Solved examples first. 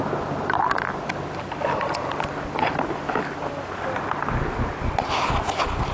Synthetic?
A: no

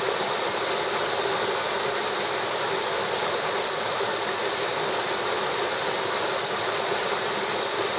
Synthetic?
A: no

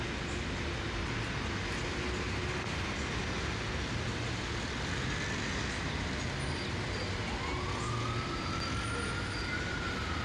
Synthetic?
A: no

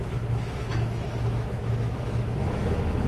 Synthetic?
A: yes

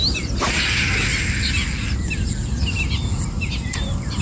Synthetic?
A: no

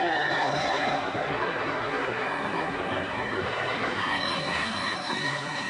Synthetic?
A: yes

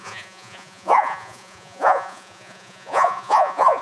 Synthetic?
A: yes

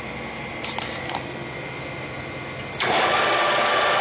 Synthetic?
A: no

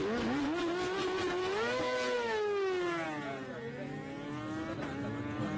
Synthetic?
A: no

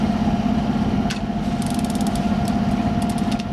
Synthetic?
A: no